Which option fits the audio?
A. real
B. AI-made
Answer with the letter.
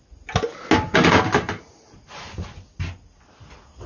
A